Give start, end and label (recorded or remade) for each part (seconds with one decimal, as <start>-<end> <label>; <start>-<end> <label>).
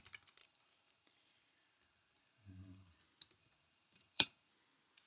0.0-0.4 recorded; 0.4-3.0 remade; 3.0-3.4 recorded; 3.4-4.5 remade; 4.5-5.1 recorded